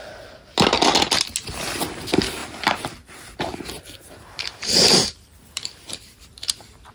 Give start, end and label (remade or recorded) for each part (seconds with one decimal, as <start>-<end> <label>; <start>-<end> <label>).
0.0-2.4 recorded; 2.4-6.5 remade; 6.5-6.9 recorded